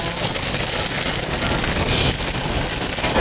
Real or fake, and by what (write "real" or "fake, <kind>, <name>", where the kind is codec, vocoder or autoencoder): real